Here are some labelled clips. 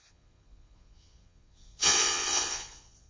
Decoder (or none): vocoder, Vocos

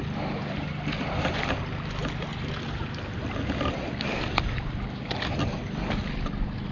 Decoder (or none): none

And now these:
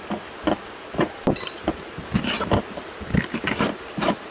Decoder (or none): none